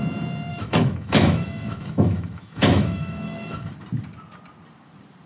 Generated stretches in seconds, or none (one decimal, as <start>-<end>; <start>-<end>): 0.5-3.7